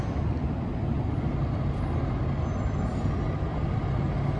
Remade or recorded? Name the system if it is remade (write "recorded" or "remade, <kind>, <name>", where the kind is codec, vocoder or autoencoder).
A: recorded